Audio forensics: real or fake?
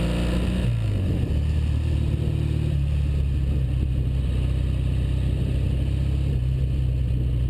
real